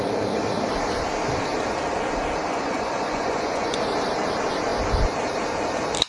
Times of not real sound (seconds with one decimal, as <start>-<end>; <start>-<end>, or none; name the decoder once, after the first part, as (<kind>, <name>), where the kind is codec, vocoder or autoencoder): 2.5-3.8 (vocoder, Vocos)